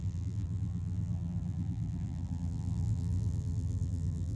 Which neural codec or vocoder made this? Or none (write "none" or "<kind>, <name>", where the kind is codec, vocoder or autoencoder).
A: vocoder, BigVGAN v2